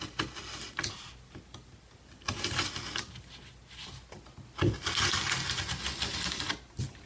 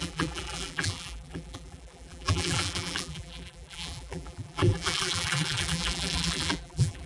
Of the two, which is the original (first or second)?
first